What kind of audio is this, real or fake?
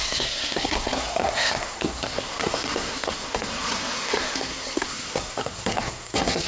fake